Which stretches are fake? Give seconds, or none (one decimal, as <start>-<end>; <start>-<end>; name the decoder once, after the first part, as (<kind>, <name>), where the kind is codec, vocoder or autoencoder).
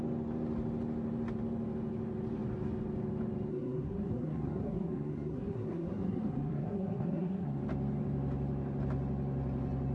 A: 3.5-7.6 (codec, SNAC)